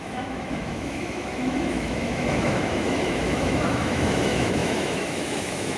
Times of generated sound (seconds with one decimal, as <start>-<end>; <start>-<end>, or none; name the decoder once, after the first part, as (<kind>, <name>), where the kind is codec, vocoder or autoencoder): 0.0-5.8 (autoencoder, DAC-VAE)